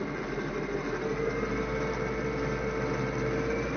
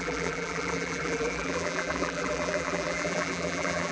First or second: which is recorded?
first